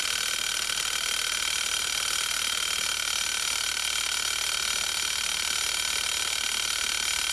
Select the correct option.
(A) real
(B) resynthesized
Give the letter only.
A